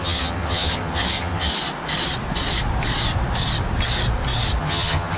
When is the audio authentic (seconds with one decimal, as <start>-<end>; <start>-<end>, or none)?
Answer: 1.5-4.6